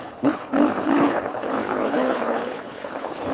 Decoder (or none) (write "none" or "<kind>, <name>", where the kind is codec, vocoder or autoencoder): codec, HILCodec